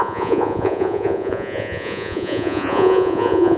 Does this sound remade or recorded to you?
remade